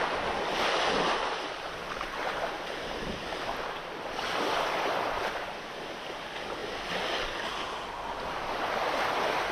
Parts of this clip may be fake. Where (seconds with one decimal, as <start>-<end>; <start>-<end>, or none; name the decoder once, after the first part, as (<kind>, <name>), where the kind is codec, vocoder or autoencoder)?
none